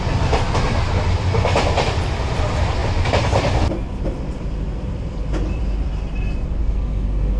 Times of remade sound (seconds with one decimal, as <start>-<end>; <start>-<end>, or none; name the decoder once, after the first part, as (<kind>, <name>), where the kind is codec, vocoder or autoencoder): 6.6-7.4 (codec, SNAC)